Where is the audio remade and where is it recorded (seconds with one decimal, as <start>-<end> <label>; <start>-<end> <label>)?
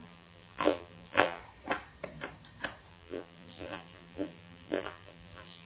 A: 0.0-1.4 remade; 1.4-2.9 recorded; 2.9-5.7 remade